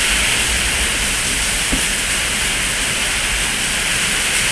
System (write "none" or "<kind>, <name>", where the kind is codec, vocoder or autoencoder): none